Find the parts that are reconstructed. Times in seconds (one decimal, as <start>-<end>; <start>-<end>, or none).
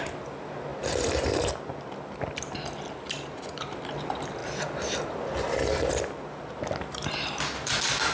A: none